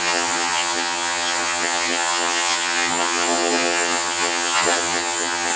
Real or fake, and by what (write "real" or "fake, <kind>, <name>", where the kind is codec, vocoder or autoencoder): fake, vocoder, HiFi-GAN